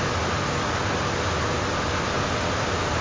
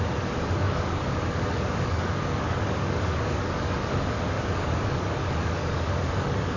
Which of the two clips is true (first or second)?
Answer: first